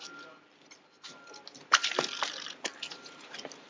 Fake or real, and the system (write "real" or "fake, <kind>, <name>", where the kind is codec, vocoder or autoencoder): real